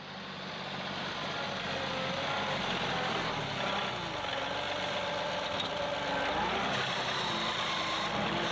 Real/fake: real